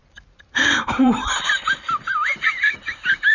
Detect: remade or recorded remade